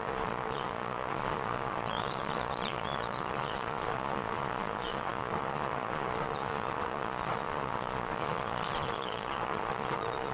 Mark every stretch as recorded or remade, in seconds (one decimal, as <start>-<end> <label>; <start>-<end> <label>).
0.0-10.3 remade